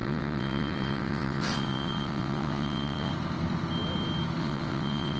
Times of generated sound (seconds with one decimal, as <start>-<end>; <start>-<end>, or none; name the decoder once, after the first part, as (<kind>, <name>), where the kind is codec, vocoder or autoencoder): 0.0-3.1 (vocoder, WaveNeXt); 4.4-5.2